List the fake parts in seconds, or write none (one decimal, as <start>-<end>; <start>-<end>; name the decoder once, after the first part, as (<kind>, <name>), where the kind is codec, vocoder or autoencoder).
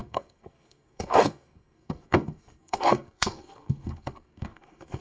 0.0-5.0 (codec, SNAC)